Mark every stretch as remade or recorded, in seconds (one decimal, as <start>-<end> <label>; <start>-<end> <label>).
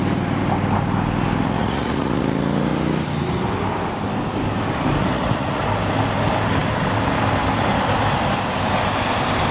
0.0-1.6 recorded; 1.6-2.2 remade; 2.2-5.0 recorded; 5.0-5.6 remade; 5.6-9.5 recorded